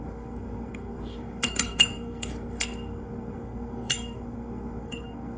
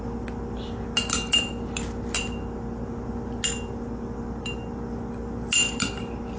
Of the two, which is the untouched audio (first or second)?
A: second